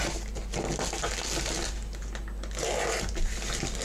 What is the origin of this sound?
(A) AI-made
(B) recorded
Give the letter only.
B